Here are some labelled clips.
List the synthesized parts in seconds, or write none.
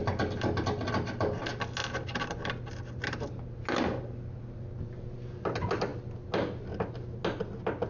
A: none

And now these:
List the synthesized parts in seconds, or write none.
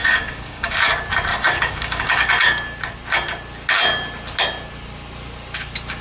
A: 0.0-0.8 (codec, DAC); 1.3-2.3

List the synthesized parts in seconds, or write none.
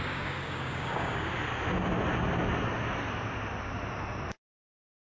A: 0.0-1.3 (codec, DAC); 4.3-5.2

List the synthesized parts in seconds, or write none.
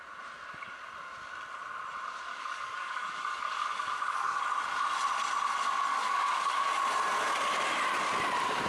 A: 2.3-4.4 (codec, DAC); 5.9-6.7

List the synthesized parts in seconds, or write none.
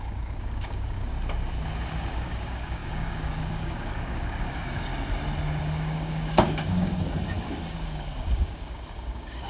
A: 0.0-1.1 (codec, DAC); 2.1-4.9; 5.6-9.5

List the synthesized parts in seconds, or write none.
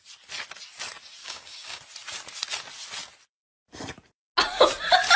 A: 1.2-1.8 (codec, DAC)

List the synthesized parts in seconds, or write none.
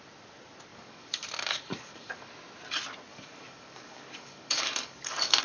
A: 0.7-2.3 (codec, DAC); 3.1-5.4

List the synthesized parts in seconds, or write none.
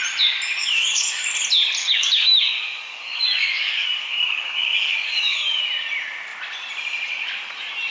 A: 0.6-1.3 (codec, DAC); 1.8-5.6